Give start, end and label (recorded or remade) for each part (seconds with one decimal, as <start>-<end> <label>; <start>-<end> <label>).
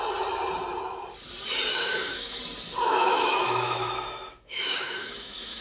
0.0-1.7 recorded; 1.7-2.4 remade; 2.4-2.8 recorded; 2.8-5.6 remade